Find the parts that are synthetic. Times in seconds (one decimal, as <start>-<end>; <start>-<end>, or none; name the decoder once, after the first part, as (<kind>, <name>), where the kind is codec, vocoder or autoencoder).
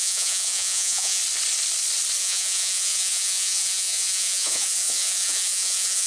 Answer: 0.0-1.2 (vocoder, Vocos); 2.2-6.1